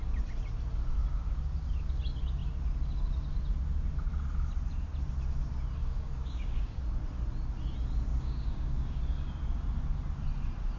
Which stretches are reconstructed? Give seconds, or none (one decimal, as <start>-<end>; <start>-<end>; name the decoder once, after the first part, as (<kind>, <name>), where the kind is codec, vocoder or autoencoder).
5.8-6.8 (codec, DAC); 8.1-9.0